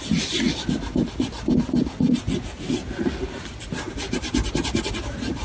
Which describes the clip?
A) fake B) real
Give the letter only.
B